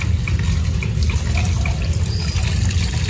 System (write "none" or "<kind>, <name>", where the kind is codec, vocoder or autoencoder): none